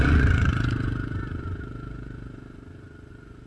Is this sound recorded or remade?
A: remade